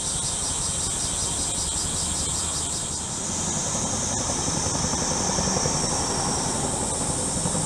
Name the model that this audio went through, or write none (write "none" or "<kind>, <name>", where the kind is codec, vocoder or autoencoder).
none